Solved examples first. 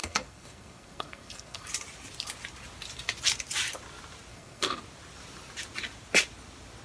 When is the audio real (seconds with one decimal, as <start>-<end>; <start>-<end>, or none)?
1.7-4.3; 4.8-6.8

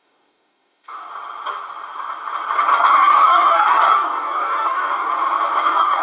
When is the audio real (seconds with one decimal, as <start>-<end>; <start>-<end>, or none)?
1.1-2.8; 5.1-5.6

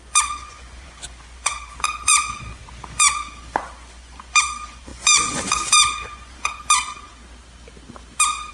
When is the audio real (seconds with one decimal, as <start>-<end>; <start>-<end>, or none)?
7.1-8.5